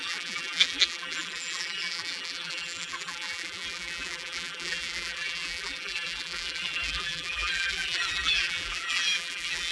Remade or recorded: remade